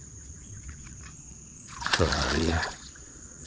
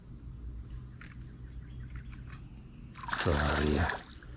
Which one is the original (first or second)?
second